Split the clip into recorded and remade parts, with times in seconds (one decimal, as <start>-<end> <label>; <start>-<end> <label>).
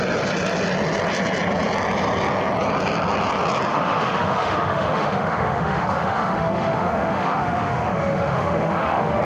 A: 0.0-3.7 recorded; 3.7-9.2 remade